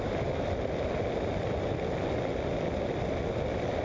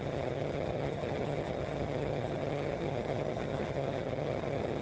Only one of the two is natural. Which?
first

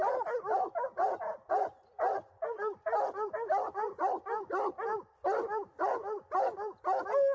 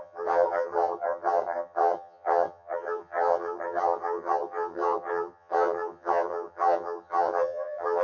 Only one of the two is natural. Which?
first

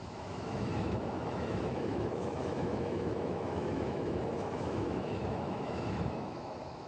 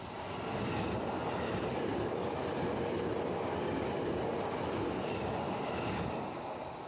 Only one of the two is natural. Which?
second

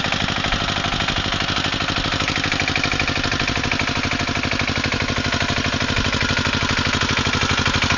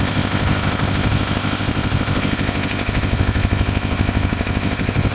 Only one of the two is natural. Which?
first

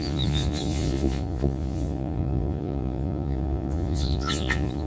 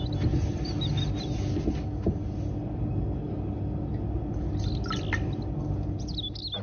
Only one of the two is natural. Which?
second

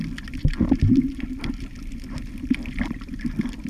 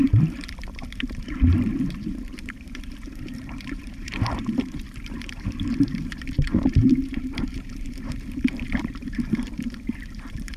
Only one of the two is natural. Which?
first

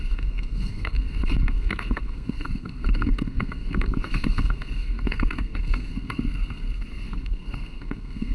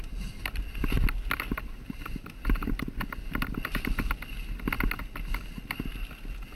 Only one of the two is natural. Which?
second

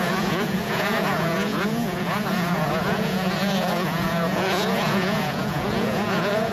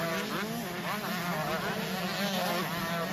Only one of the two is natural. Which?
second